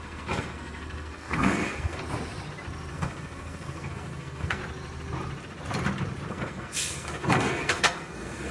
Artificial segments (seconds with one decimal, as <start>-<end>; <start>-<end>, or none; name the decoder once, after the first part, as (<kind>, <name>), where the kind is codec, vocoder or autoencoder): 0.0-2.0 (codec, SNAC); 2.9-4.6; 6.3-8.5